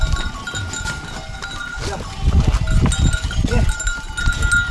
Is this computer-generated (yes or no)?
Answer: no